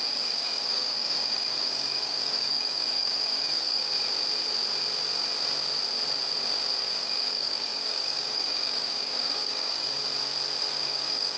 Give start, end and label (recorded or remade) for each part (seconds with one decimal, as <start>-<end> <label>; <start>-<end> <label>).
0.0-3.9 remade; 3.9-6.8 recorded; 6.8-10.0 remade; 10.0-10.7 recorded; 10.7-11.4 remade